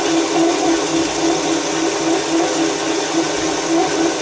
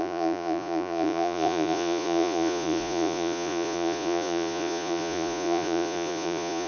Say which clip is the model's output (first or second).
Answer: second